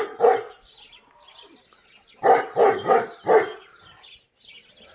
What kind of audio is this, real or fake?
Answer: real